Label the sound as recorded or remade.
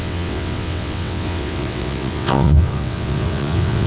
remade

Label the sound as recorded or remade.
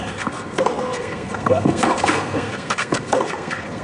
remade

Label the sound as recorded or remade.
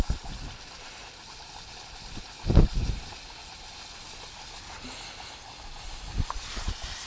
recorded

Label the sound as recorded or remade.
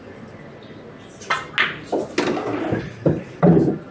recorded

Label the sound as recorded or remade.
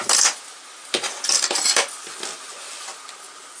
recorded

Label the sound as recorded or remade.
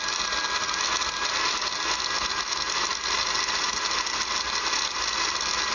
recorded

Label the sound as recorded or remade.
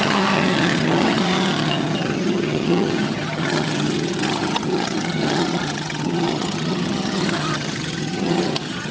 remade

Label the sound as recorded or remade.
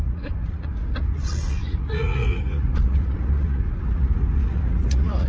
remade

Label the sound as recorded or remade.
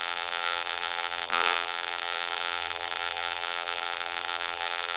remade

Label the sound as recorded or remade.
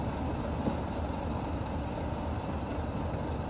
recorded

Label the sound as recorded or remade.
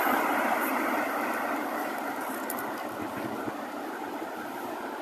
recorded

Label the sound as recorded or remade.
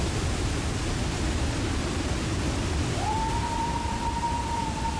recorded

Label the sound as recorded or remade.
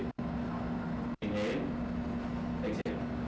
recorded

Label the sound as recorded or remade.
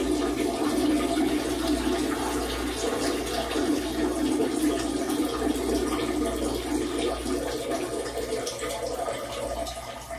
recorded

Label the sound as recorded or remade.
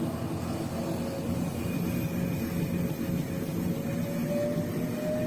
recorded